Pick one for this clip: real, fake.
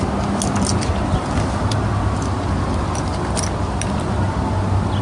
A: real